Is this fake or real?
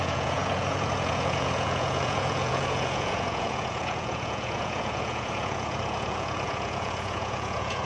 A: fake